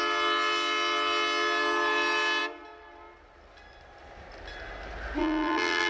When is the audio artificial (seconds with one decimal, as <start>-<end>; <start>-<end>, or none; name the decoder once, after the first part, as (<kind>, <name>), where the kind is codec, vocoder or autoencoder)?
5.2-5.9 (vocoder, BigVGAN v2)